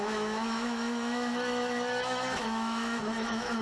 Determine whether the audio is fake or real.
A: fake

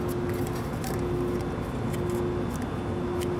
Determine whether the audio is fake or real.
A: real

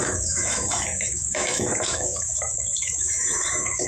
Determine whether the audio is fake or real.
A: fake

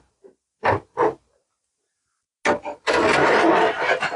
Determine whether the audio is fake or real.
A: real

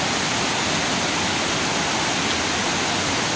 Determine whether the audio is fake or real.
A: real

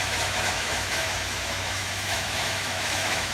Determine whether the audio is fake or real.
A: fake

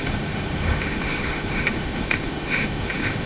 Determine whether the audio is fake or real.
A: fake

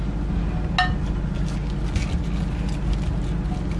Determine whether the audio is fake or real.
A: real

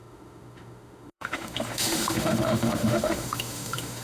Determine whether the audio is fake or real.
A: fake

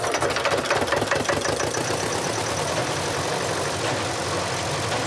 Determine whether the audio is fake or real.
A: real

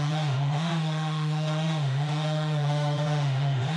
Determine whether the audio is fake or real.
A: fake